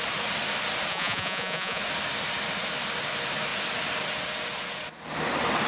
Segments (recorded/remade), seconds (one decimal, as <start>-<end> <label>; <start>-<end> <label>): 0.0-0.9 recorded; 0.9-1.8 remade; 1.8-5.7 recorded